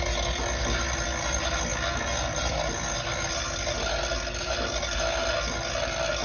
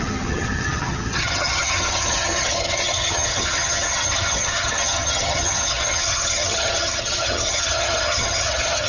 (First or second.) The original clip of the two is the first